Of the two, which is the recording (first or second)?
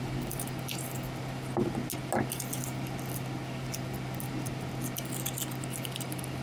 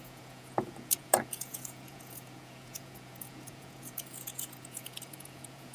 first